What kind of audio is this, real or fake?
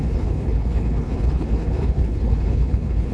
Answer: fake